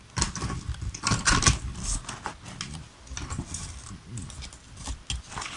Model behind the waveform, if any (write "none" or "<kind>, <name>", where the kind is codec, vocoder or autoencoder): none